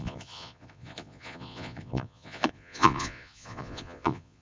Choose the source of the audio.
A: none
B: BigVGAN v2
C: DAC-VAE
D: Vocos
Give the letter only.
D